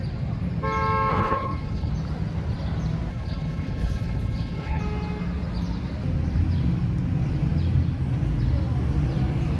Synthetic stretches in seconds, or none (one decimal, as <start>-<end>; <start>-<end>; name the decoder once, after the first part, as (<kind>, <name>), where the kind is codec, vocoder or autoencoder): 1.1-1.9 (codec, HILCodec); 3.1-4.8